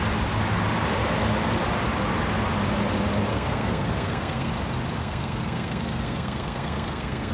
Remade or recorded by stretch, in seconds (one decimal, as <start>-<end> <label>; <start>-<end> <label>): 0.0-3.3 recorded; 3.3-4.5 remade; 4.5-5.0 recorded; 5.0-7.3 remade